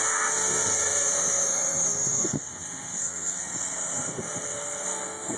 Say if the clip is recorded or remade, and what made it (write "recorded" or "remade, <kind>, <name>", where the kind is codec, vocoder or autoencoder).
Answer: remade, codec, SNAC